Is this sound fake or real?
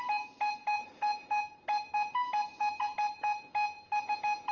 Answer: real